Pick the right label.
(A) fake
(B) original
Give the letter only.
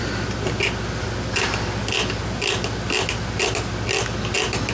B